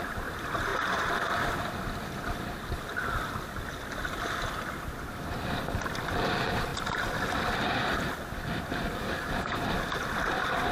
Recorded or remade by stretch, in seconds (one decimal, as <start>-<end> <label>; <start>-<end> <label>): 0.0-9.0 recorded; 9.0-9.5 remade; 9.5-10.7 recorded